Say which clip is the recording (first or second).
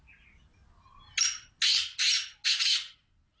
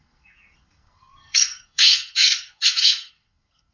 first